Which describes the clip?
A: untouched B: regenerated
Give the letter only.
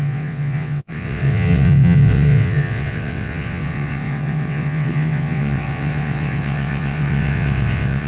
B